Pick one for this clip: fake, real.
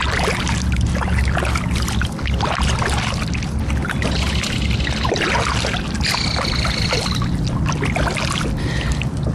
real